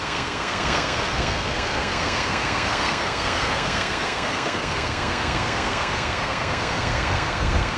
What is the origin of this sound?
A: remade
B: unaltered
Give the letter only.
A